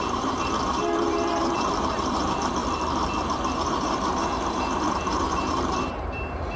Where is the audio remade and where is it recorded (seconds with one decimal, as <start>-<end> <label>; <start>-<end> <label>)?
0.0-2.6 remade; 2.6-3.5 recorded; 3.5-6.6 remade